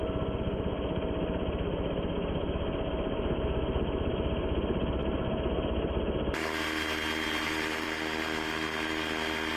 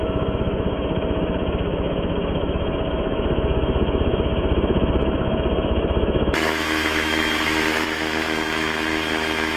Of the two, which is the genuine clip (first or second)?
first